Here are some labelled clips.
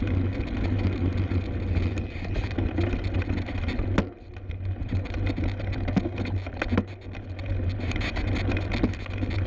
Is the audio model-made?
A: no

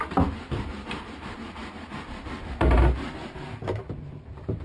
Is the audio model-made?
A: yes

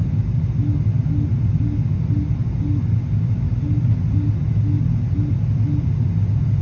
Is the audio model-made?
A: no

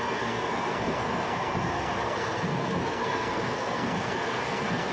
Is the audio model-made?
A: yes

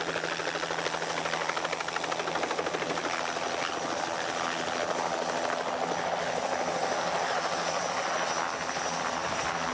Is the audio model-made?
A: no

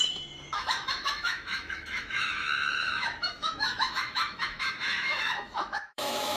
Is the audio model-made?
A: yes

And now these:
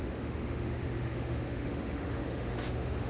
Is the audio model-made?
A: yes